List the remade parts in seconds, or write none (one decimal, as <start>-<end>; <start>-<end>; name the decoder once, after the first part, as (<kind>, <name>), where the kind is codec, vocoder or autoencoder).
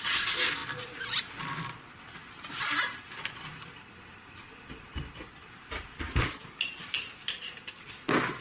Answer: 4.9-7.6 (vocoder, BigVGAN v2)